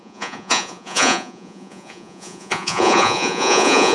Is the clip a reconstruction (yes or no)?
yes